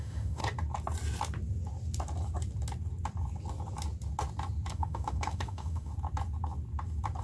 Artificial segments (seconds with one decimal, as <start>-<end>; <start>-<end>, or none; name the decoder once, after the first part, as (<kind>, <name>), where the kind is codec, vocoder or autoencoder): 0.0-0.4 (autoencoder, DAC-VAE); 4.7-5.9